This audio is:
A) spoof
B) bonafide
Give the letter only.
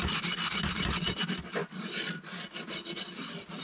B